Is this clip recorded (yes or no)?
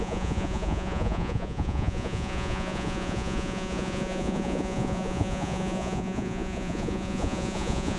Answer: no